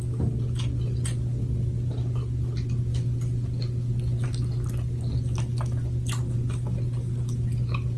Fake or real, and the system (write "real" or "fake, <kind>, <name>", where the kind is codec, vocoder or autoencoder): real